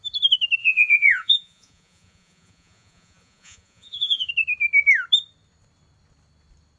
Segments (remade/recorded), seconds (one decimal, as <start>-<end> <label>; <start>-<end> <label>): 0.0-0.6 recorded; 0.6-4.3 remade; 4.3-6.8 recorded